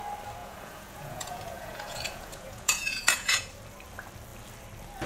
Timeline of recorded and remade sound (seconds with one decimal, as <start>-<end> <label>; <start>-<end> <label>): 0.0-0.4 recorded; 0.4-3.5 remade; 3.5-5.1 recorded